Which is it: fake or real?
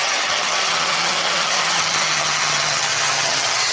fake